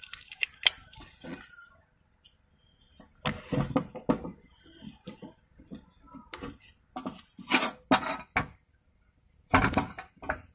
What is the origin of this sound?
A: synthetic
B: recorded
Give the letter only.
B